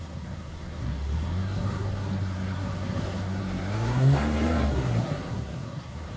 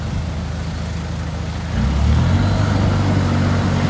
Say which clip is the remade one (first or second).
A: first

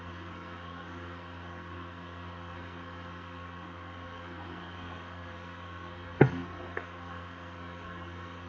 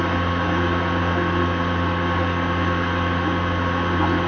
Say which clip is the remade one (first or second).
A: first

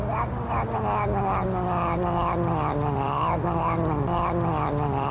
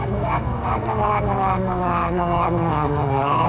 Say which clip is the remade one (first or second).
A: second